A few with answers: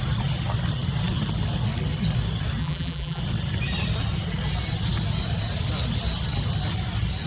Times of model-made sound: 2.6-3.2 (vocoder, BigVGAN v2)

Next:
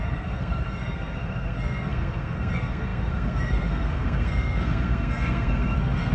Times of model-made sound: 0.0-6.1 (codec, SNAC)